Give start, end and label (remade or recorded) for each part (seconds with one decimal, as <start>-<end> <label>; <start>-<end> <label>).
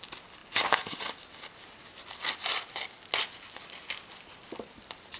0.0-5.2 recorded